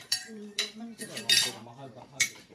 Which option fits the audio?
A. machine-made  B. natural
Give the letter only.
A